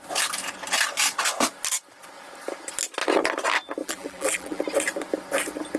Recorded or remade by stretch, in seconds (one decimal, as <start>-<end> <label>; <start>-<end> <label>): 0.0-3.8 recorded; 3.8-4.6 remade; 4.6-5.8 recorded